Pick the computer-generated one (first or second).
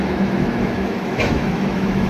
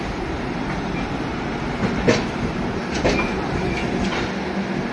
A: first